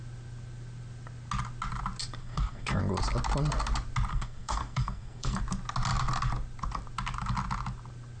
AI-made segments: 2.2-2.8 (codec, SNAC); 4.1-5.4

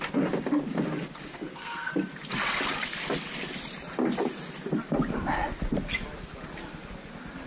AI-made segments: 1.3-1.9 (codec, SNAC)

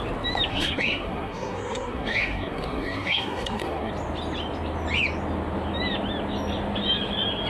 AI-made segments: 0.5-3.9 (codec, SNAC)

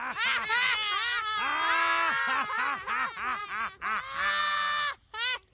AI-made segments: none

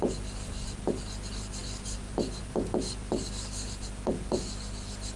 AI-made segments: none

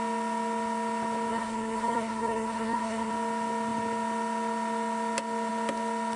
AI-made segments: 1.3-3.1 (codec, SNAC)

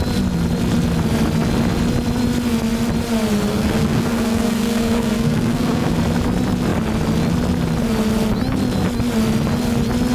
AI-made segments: 3.5-6.0 (codec, SNAC)